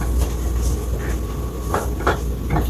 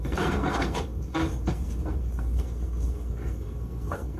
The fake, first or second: second